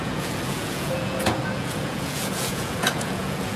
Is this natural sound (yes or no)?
no